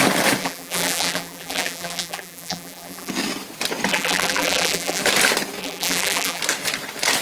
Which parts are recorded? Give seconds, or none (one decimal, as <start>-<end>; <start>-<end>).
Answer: 0.0-0.4; 3.1-3.9; 5.0-5.6; 6.4-7.2